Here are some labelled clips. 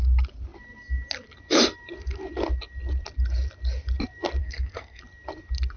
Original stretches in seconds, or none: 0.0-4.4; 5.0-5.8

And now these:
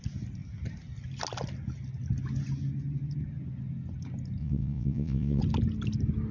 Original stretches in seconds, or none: 0.0-4.4; 5.4-6.3